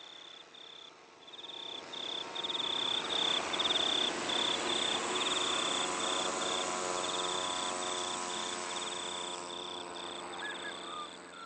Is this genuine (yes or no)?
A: yes